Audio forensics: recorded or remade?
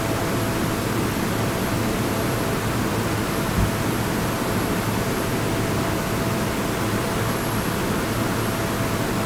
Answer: recorded